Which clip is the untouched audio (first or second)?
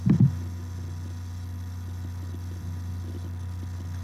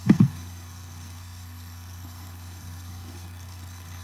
first